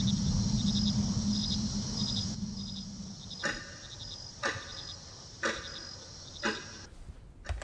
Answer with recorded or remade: recorded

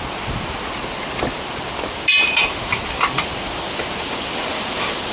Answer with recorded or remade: recorded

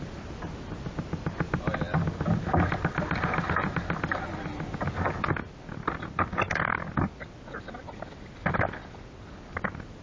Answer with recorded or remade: recorded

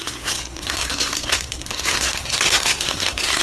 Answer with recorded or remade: remade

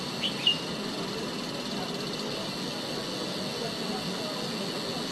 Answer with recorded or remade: recorded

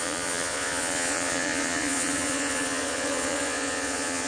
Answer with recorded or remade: remade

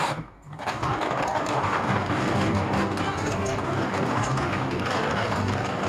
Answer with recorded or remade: remade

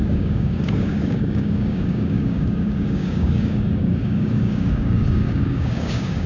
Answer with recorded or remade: remade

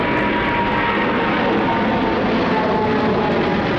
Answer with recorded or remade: recorded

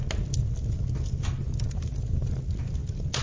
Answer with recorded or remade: recorded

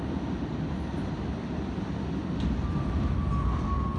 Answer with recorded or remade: recorded